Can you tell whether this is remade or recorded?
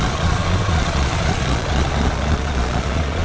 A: remade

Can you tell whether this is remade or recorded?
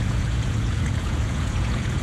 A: remade